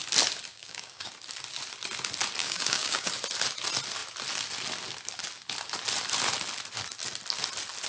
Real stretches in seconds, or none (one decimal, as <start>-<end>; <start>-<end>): 0.0-0.5; 1.1-2.4; 3.1-7.9

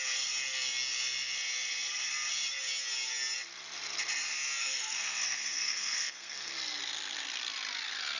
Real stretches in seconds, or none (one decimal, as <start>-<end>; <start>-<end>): 0.0-4.6; 6.5-8.2

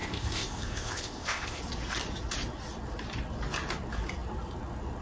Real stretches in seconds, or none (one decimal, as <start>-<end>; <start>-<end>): 1.6-5.0

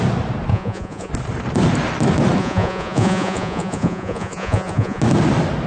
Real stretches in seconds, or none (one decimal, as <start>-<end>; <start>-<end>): 0.0-0.5; 1.1-2.4; 5.0-5.7